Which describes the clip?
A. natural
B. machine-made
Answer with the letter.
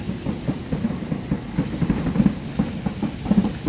A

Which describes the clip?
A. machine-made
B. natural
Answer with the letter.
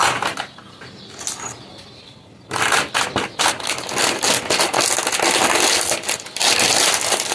B